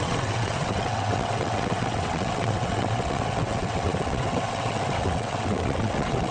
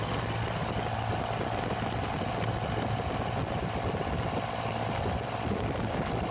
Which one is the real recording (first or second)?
second